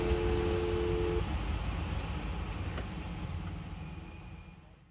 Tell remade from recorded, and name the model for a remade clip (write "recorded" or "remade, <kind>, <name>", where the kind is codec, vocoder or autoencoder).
recorded